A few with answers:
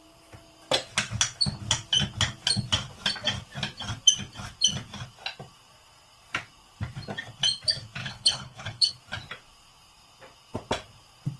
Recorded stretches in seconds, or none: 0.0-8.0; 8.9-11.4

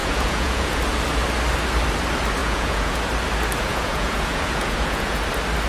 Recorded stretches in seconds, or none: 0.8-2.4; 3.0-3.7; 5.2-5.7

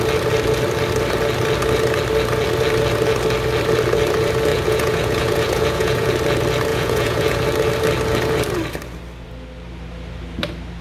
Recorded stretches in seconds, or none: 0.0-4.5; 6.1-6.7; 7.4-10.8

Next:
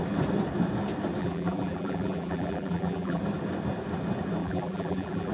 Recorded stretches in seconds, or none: 0.0-1.2; 3.2-4.4

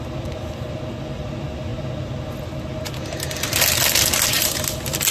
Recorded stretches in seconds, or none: 0.0-5.1

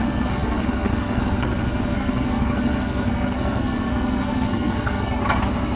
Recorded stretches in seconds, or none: 5.2-5.8